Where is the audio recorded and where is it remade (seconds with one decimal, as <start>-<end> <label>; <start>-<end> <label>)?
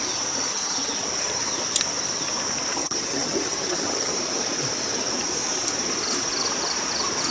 0.0-0.5 recorded; 0.5-1.1 remade; 1.1-2.8 recorded; 2.8-4.1 remade; 4.1-7.3 recorded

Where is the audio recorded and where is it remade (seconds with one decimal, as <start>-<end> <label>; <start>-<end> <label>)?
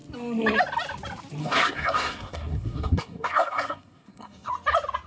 0.0-1.4 recorded; 1.4-4.5 remade; 4.5-5.1 recorded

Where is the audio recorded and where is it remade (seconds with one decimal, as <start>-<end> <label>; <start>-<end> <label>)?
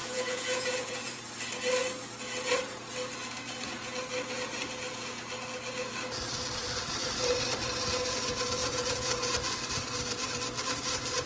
0.0-1.2 remade; 1.2-8.6 recorded; 8.6-9.1 remade; 9.1-11.3 recorded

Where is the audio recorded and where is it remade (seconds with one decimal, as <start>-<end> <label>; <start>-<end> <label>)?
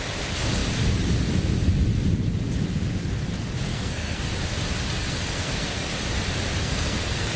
0.0-3.7 recorded; 3.7-4.3 remade; 4.3-5.0 recorded; 5.0-5.9 remade; 5.9-6.6 recorded; 6.6-7.4 remade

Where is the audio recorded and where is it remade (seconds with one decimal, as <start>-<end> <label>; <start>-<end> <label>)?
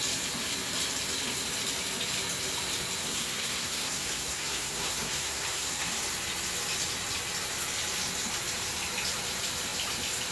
0.0-3.0 recorded; 3.0-5.9 remade; 5.9-10.3 recorded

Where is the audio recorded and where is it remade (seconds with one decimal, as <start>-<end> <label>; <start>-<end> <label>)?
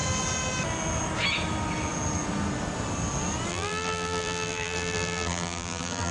0.0-3.5 recorded; 3.5-6.1 remade